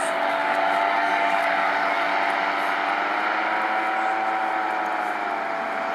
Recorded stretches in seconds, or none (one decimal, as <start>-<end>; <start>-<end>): 2.1-5.9